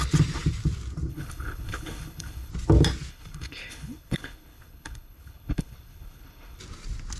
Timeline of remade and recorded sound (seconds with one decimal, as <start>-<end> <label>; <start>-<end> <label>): 0.0-1.1 recorded; 1.1-2.5 remade; 2.5-3.1 recorded; 3.1-6.6 remade; 6.6-7.2 recorded